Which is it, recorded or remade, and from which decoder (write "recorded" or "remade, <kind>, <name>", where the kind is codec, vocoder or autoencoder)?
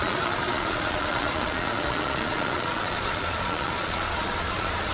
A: remade, vocoder, Vocos